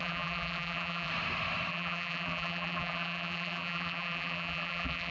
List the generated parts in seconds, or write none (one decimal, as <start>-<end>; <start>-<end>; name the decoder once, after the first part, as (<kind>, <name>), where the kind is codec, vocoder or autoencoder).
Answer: 0.0-1.1 (vocoder, BigVGAN v2); 1.7-5.1